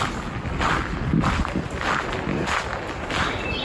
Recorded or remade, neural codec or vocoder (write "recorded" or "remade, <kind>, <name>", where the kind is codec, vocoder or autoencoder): recorded